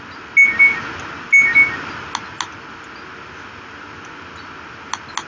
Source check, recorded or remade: recorded